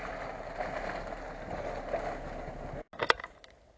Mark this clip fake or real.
real